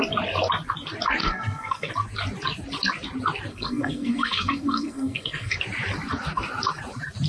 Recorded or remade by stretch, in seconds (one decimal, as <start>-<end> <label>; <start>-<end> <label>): 0.0-1.2 recorded; 1.2-1.9 remade; 1.9-3.5 recorded; 3.5-5.6 remade; 5.6-7.3 recorded